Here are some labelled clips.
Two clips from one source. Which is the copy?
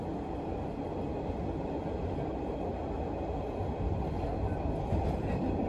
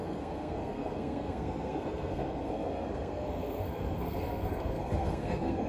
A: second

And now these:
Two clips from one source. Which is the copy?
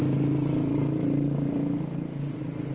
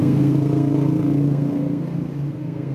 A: second